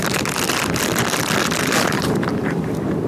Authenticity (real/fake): real